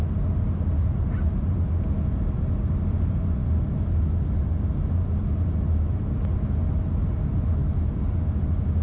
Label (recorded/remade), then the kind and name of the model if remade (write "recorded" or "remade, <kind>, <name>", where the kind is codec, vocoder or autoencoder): recorded